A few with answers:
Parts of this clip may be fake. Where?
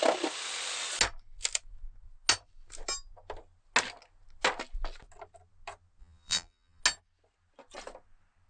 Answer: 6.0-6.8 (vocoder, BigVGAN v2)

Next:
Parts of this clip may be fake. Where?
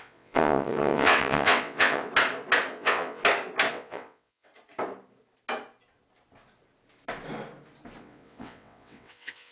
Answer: 0.0-2.1 (vocoder, WaveNeXt); 2.7-3.2; 3.7-4.5; 8.0-9.5